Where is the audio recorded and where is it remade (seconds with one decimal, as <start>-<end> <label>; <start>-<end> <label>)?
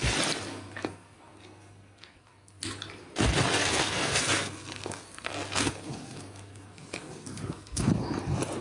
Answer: 0.0-0.5 recorded; 0.5-2.6 remade; 2.6-3.5 recorded; 3.5-7.9 remade; 7.9-8.6 recorded